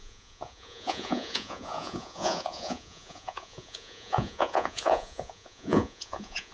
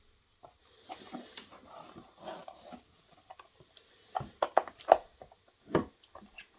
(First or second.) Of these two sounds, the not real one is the first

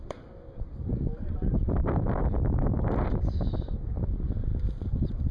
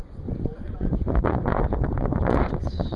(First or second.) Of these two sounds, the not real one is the second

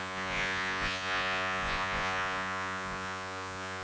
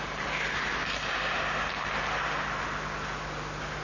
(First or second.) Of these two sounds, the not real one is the first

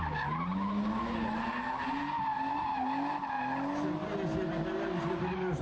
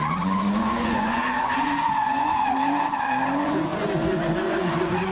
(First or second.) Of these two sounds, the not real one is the second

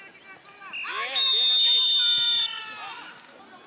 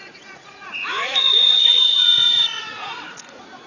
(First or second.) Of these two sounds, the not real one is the second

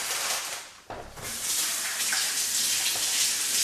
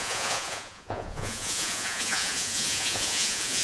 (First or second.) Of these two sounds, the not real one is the second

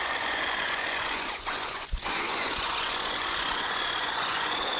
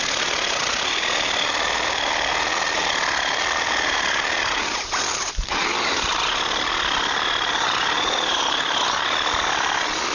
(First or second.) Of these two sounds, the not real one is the first